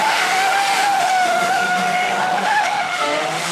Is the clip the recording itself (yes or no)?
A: no